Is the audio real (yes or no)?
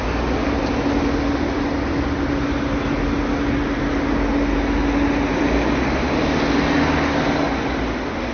yes